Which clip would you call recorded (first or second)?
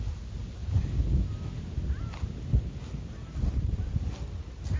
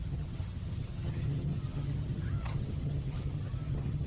first